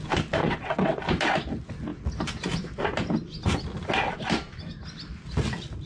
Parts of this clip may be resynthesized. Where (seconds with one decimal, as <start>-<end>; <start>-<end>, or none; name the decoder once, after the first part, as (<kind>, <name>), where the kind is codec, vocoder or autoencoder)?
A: 0.4-1.0 (vocoder, WaveNeXt)